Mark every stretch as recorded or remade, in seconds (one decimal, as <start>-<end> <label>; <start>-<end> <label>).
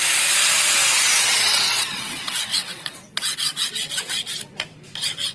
0.0-1.1 recorded; 1.1-4.3 remade; 4.3-5.3 recorded